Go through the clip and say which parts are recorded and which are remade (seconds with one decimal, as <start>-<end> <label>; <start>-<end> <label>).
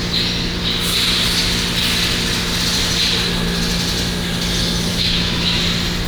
0.0-4.9 recorded; 4.9-5.6 remade; 5.6-6.1 recorded